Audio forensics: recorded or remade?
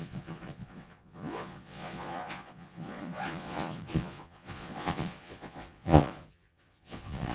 remade